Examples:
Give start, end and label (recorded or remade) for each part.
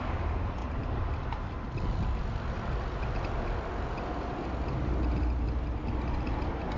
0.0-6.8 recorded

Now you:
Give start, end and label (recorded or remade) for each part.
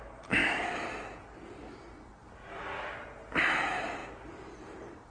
0.0-5.1 recorded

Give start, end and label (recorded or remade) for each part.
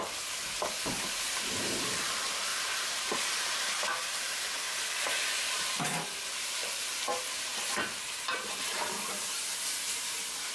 0.0-4.5 remade; 4.5-5.4 recorded; 5.4-7.5 remade; 7.5-8.1 recorded; 8.1-10.5 remade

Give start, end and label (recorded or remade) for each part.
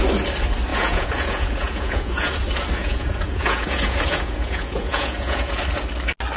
0.0-0.7 recorded; 0.7-2.3 remade; 2.3-2.8 recorded; 2.8-5.6 remade; 5.6-6.4 recorded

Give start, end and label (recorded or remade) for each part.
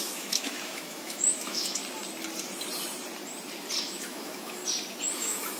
0.0-1.8 remade; 1.8-3.8 recorded; 3.8-4.6 remade; 4.6-5.1 recorded; 5.1-5.6 remade